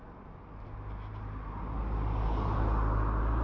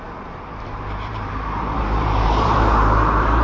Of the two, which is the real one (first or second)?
first